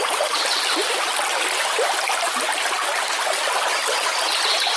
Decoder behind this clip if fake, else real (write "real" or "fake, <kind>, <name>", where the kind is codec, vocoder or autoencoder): real